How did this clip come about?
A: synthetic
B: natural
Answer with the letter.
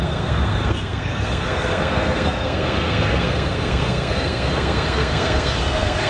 A